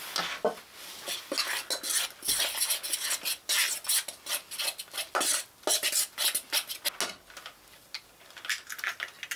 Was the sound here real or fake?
real